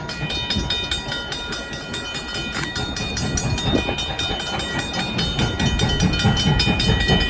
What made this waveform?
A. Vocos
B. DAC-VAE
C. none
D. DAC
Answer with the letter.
C